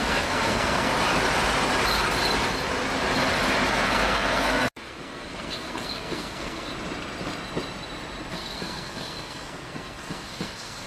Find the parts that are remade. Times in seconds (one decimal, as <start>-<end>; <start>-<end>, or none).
0.0-0.9; 3.7-6.7; 8.3-10.9